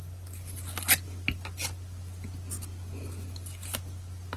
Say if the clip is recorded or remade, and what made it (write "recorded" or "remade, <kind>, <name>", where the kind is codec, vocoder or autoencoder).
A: recorded